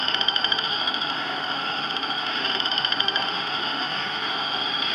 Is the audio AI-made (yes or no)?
yes